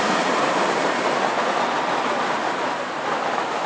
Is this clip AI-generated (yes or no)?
no